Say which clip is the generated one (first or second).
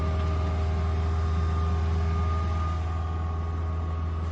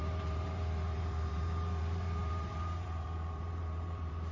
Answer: second